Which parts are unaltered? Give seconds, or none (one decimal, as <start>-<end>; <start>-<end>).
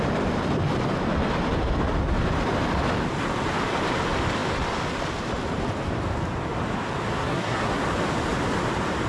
0.0-7.2; 7.8-9.1